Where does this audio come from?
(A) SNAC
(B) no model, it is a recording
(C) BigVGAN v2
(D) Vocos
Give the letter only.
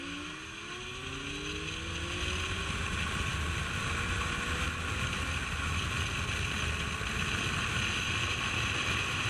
B